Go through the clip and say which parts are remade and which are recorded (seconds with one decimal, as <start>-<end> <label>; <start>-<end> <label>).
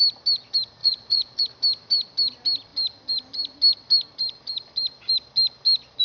0.0-0.8 recorded; 0.8-1.4 remade; 1.4-6.0 recorded